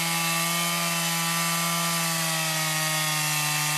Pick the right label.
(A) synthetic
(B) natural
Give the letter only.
B